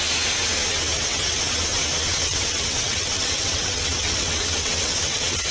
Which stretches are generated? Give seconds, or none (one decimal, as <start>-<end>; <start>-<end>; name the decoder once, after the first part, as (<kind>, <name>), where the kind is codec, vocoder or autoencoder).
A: 0.9-1.4 (vocoder, WaveNeXt); 2.1-5.5